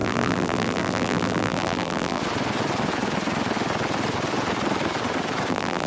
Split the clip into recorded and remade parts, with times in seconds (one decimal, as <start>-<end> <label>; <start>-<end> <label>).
0.0-2.2 remade; 2.2-5.5 recorded; 5.5-5.9 remade